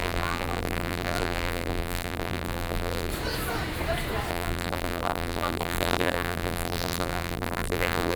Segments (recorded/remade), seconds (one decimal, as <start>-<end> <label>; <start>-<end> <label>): 0.0-3.1 remade; 3.1-4.3 recorded; 4.3-8.2 remade